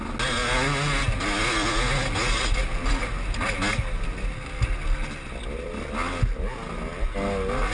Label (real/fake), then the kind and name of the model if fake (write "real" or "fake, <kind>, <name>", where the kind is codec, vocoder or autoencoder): real